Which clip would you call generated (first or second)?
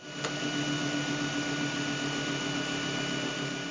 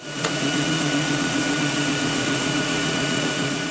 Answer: second